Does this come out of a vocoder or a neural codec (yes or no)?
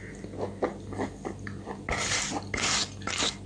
no